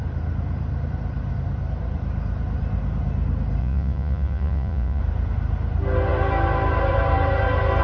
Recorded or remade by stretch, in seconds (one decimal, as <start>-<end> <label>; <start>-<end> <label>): 0.0-3.6 recorded; 3.6-5.0 remade; 5.0-7.8 recorded